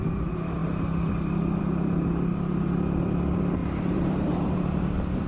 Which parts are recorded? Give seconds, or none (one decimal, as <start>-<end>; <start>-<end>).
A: 0.0-2.3; 3.0-3.6; 4.8-5.3